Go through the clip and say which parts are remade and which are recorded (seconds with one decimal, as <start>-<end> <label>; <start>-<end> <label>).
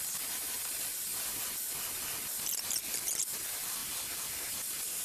0.0-5.0 recorded